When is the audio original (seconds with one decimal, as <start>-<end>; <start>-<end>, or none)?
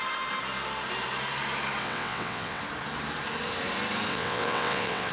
0.0-1.8; 2.6-4.1